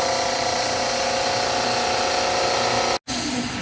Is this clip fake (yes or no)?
no